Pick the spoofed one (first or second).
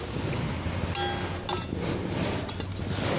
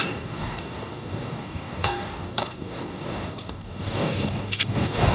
second